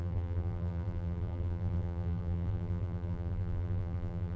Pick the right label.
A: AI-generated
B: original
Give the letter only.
A